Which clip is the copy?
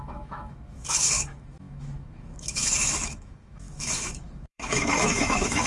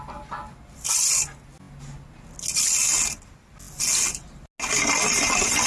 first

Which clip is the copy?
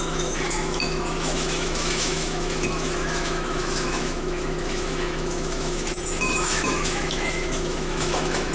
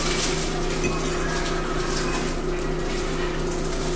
first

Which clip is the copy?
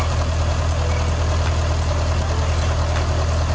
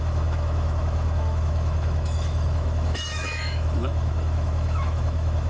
second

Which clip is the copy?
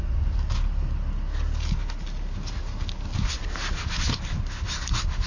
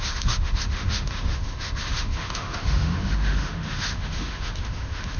second